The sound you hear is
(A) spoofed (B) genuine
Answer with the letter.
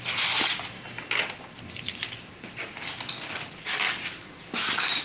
B